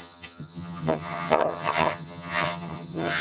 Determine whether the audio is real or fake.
fake